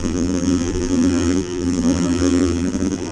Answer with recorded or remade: remade